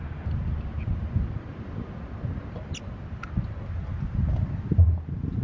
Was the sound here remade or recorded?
recorded